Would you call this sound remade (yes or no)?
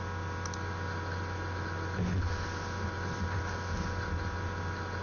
no